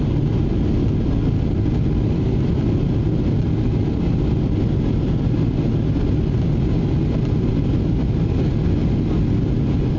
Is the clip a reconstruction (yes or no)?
no